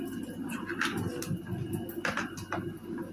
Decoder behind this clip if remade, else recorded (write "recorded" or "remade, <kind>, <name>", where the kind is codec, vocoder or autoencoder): recorded